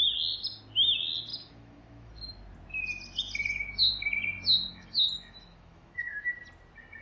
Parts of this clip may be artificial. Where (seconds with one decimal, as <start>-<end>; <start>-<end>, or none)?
1.3-2.1; 4.7-6.4